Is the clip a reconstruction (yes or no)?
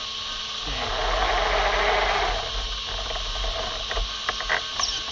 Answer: no